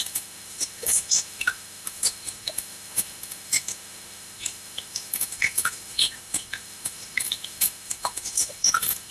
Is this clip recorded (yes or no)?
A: no